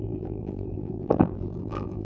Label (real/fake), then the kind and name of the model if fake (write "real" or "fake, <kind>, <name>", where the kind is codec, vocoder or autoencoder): fake, vocoder, BigVGAN v2